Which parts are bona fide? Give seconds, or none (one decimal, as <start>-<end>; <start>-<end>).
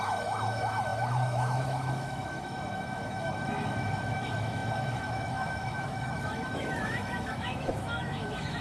none